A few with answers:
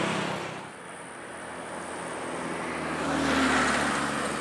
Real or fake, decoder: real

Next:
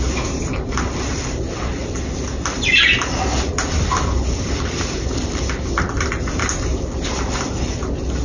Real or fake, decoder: real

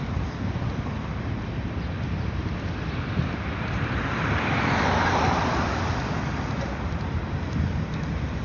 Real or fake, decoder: fake, vocoder, BigVGAN v2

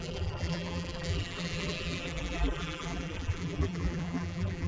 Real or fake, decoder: fake, vocoder, BigVGAN v2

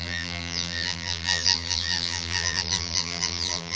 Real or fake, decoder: fake, vocoder, BigVGAN v2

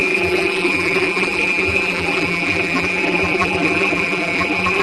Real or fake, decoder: fake, vocoder, BigVGAN v2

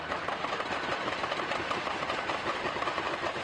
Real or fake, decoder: fake, vocoder, BigVGAN v2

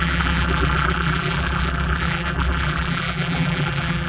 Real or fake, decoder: fake, vocoder, BigVGAN v2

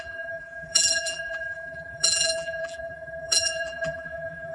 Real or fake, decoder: fake, vocoder, BigVGAN v2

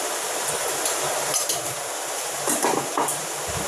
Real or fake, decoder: fake, vocoder, BigVGAN v2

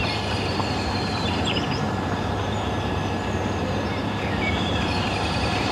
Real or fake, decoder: fake, vocoder, BigVGAN v2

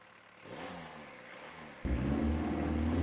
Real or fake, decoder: real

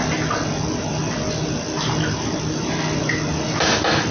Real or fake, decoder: real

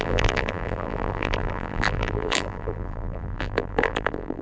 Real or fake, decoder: fake, vocoder, BigVGAN v2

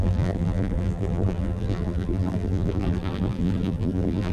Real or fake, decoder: fake, vocoder, BigVGAN v2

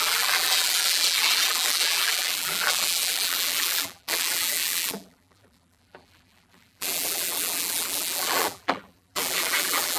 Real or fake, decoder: fake, vocoder, BigVGAN v2